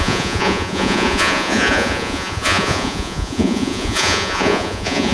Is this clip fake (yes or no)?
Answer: yes